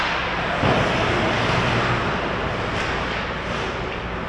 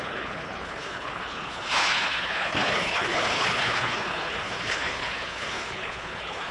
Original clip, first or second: first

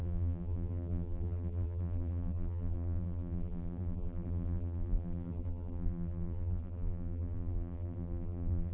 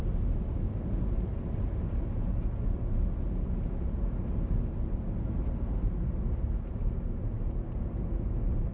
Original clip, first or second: second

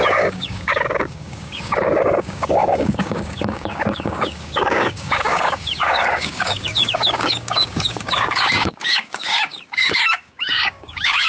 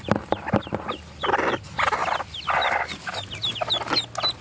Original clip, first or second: second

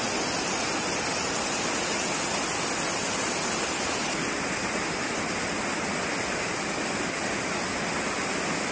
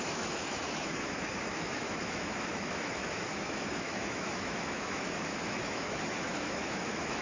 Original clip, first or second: first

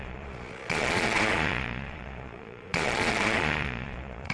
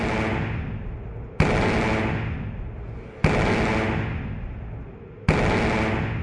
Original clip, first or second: second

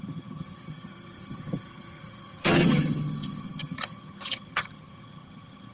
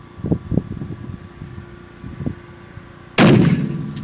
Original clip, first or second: second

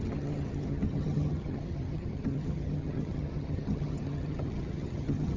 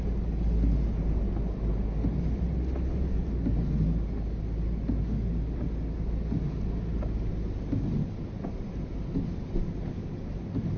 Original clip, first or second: second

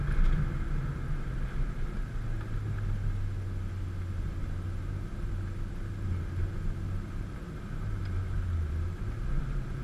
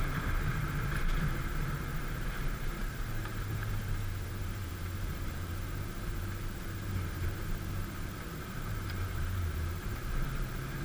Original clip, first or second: first